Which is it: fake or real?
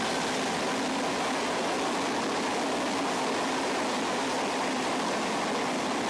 real